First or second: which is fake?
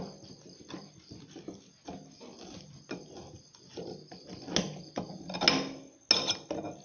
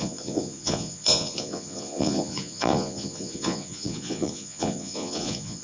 second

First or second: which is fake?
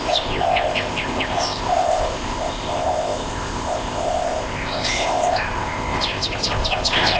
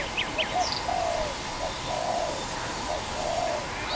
first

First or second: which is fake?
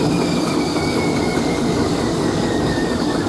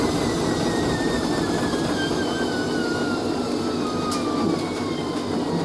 first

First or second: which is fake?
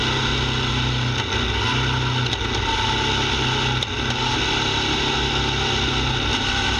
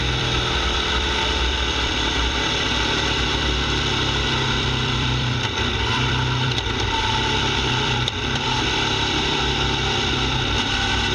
second